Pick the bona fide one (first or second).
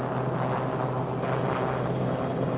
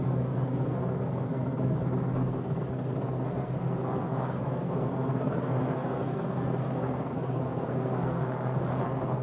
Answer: first